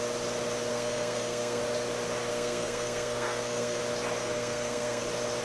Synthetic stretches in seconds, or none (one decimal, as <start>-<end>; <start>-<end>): 0.7-1.6; 2.3-3.8; 4.2-5.0